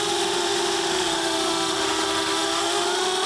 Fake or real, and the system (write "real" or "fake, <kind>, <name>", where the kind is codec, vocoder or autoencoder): fake, autoencoder, DAC-VAE